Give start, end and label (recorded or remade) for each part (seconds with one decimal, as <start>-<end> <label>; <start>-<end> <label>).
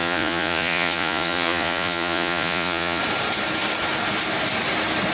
0.0-3.0 remade; 3.0-5.1 recorded